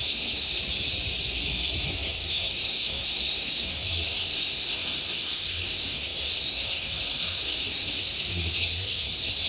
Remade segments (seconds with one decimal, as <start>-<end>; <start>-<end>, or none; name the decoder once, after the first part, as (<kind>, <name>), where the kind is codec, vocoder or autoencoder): 0.0-0.6 (codec, SNAC); 1.3-9.5